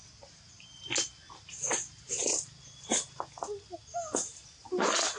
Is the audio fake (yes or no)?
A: no